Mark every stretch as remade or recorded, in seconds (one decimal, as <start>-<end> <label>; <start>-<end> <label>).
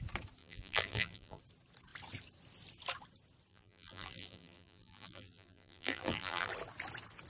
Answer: 0.0-0.4 recorded; 0.4-1.4 remade; 1.4-3.5 recorded; 3.5-6.5 remade; 6.5-7.3 recorded